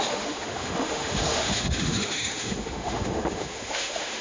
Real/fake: fake